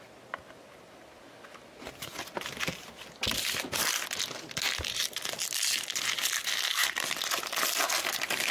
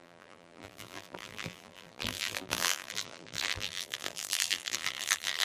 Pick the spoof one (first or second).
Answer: second